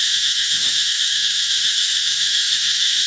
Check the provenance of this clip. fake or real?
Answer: fake